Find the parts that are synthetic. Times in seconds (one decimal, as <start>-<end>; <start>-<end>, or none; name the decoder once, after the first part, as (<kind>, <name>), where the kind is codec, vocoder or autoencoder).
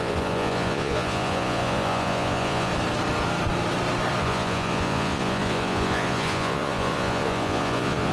0.0-2.7 (vocoder, Vocos); 4.2-8.1